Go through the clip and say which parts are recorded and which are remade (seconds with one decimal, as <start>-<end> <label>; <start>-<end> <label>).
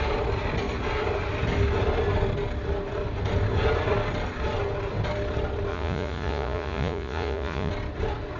0.0-5.7 recorded; 5.7-7.7 remade; 7.7-8.4 recorded